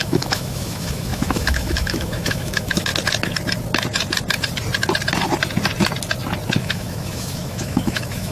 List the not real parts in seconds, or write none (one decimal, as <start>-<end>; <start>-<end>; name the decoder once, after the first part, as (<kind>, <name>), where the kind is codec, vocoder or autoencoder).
0.0-2.9 (autoencoder, DAC-VAE); 6.6-8.3